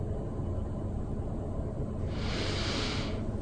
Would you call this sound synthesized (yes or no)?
no